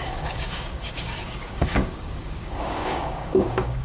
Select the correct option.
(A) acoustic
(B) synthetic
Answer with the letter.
B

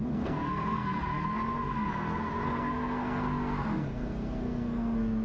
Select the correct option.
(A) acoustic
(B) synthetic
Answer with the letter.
B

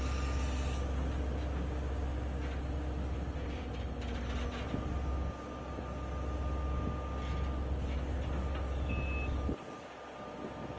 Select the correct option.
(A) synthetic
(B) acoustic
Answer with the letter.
B